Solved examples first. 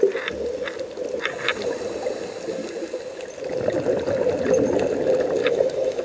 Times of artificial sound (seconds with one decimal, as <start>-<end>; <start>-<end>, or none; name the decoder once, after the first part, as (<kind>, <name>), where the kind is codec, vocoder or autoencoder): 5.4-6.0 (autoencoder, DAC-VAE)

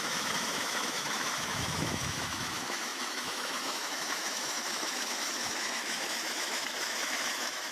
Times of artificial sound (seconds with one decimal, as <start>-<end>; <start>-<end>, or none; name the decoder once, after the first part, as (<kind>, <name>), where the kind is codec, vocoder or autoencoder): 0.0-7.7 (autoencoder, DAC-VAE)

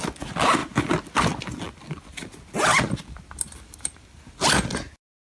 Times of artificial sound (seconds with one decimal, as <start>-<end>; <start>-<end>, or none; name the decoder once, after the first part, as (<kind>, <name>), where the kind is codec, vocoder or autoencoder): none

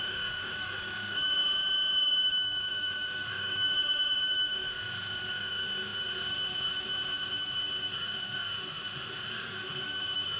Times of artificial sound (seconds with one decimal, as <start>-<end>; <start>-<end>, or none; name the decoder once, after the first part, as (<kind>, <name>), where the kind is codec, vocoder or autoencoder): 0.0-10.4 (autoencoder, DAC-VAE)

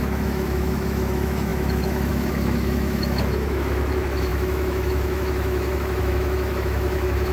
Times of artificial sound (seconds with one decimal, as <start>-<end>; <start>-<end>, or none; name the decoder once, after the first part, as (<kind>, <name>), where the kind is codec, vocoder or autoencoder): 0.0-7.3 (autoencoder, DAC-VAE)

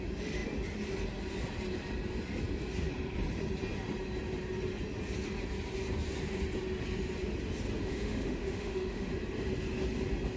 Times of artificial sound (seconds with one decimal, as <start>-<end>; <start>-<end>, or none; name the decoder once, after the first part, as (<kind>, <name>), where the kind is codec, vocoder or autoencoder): 7.8-9.1 (autoencoder, DAC-VAE)

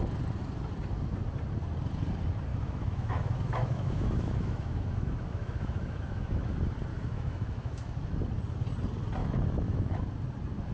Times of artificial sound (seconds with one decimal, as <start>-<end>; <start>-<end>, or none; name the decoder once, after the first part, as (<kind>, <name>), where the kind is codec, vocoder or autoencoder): 2.5-6.5 (autoencoder, DAC-VAE); 6.9-8.2; 9.2-10.0